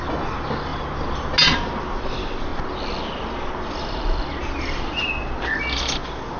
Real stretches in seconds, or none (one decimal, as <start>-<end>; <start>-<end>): 0.0-6.4